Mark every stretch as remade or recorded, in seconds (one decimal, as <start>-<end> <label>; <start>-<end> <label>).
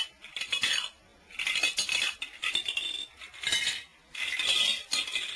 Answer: 0.0-5.4 recorded